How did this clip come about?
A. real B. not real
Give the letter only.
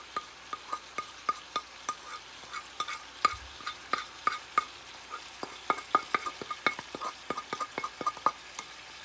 A